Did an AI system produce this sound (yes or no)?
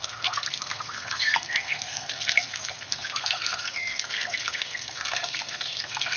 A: yes